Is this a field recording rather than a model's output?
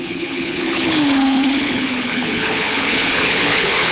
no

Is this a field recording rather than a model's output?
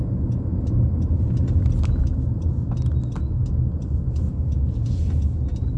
yes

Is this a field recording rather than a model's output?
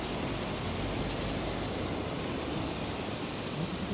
yes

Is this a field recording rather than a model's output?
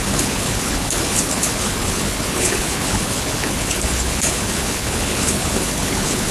no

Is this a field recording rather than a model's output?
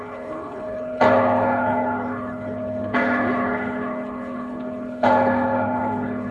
no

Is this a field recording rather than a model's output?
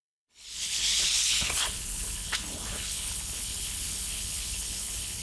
no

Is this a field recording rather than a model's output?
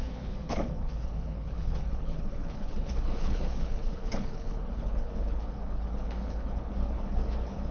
no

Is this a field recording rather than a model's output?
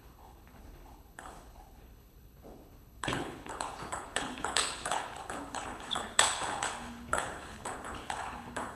no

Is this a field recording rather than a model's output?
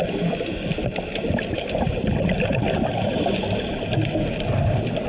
yes